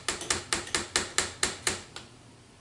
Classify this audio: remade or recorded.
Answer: recorded